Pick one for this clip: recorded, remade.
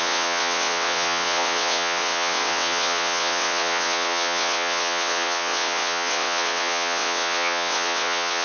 remade